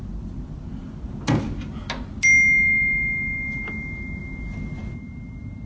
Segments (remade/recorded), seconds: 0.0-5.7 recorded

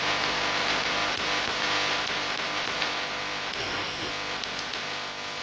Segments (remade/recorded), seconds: 0.0-3.6 recorded; 3.6-4.1 remade; 4.1-5.4 recorded